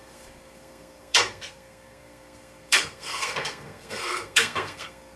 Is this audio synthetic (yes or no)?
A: yes